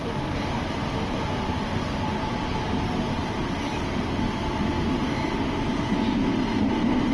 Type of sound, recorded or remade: recorded